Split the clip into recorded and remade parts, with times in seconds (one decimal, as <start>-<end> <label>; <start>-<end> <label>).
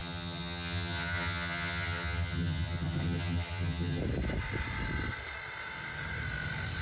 0.0-4.0 remade; 4.0-6.8 recorded